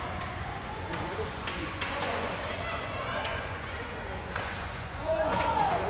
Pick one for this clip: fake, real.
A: fake